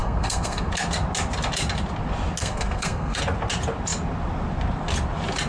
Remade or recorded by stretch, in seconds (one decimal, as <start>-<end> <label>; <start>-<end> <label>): 0.0-0.7 remade; 0.7-2.4 recorded; 2.4-3.2 remade; 3.2-5.5 recorded